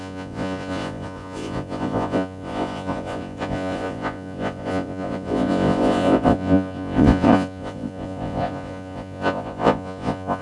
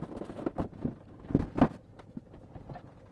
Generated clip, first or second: first